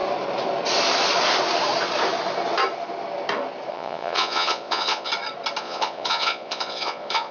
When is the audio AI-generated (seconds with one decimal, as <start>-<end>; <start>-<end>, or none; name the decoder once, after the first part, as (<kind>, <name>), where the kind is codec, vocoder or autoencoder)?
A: 3.7-5.1 (vocoder, Vocos); 5.6-7.3